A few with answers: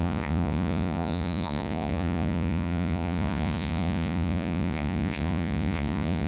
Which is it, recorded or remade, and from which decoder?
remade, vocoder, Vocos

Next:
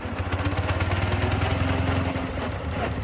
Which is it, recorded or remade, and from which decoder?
recorded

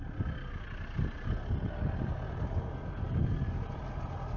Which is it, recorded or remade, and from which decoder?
recorded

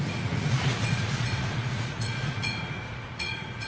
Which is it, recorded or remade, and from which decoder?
remade, vocoder, Vocos